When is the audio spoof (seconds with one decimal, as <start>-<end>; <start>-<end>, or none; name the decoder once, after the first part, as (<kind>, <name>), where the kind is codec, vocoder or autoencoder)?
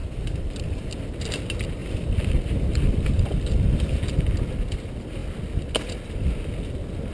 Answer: 0.0-1.1 (vocoder, BigVGAN v2); 1.8-4.0